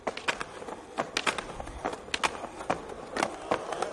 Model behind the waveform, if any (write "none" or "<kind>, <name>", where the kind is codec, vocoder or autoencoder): none